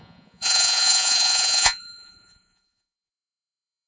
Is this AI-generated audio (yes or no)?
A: yes